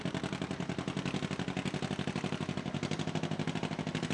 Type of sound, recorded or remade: recorded